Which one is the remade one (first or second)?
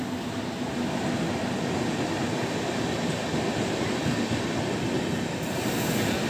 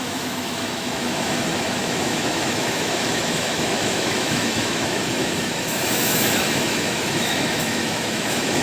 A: second